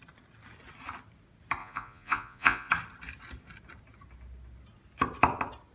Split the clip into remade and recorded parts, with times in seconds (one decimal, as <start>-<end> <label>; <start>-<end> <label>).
0.0-1.6 recorded; 1.6-2.7 remade; 2.7-5.7 recorded